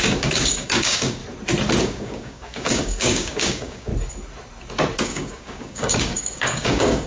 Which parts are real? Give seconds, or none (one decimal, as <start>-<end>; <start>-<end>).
1.2-1.8; 3.9-5.0